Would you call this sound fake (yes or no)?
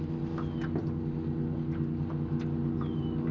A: no